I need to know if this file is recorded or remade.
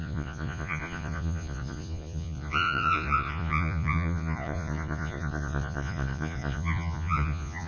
remade